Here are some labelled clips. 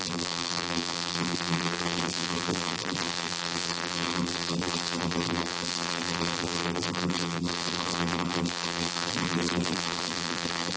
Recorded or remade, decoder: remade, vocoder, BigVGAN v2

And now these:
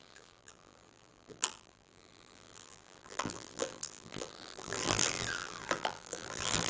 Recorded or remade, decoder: remade, vocoder, BigVGAN v2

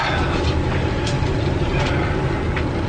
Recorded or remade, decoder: recorded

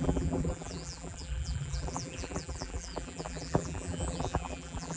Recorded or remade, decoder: remade, vocoder, BigVGAN v2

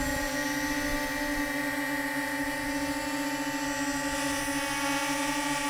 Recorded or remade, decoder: recorded